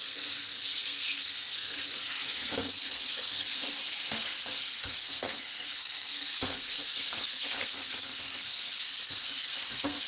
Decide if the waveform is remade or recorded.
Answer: remade